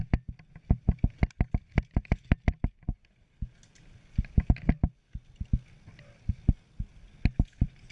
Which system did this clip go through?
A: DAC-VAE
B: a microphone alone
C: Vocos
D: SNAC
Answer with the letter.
B